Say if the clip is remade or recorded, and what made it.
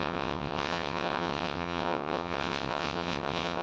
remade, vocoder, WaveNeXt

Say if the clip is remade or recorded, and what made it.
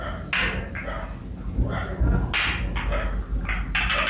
recorded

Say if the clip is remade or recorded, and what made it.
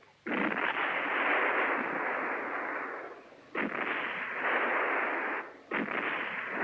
recorded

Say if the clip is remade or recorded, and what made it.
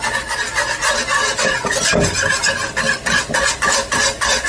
recorded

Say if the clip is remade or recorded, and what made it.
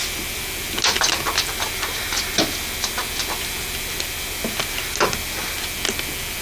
recorded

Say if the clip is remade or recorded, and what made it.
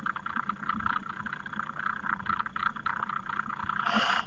recorded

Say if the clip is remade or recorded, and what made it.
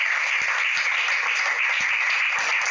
recorded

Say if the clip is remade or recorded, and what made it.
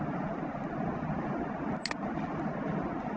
recorded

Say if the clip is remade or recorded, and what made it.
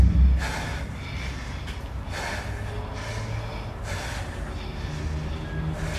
recorded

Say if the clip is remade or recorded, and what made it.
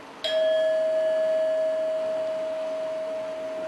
recorded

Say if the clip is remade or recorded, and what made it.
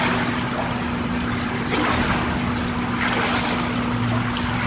recorded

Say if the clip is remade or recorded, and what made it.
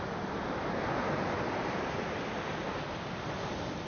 recorded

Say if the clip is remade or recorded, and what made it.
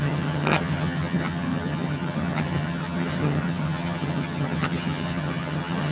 remade, vocoder, HiFi-GAN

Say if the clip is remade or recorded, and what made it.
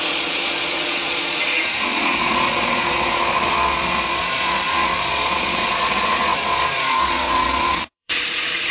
remade, vocoder, Vocos